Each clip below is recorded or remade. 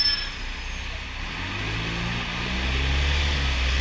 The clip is recorded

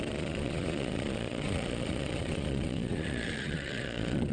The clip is remade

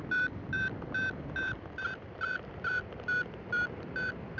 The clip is recorded